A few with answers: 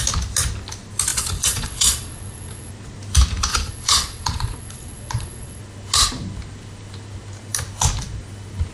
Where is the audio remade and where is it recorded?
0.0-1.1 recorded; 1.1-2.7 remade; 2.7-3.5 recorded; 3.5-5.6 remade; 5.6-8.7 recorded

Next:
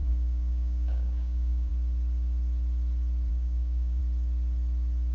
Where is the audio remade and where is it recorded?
0.0-1.7 remade; 1.7-3.3 recorded; 3.3-4.0 remade; 4.0-5.1 recorded

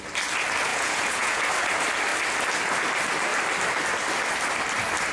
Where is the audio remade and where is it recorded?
0.0-0.7 recorded; 0.7-1.4 remade; 1.4-5.1 recorded

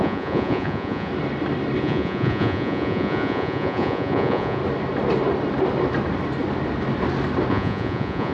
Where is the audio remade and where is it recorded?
0.0-1.1 remade; 1.1-1.8 recorded; 1.8-4.6 remade; 4.6-7.5 recorded; 7.5-8.3 remade

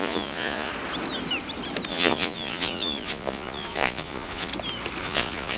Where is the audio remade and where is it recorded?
0.0-0.7 remade; 0.7-1.9 recorded; 1.9-4.5 remade; 4.5-5.0 recorded; 5.0-5.6 remade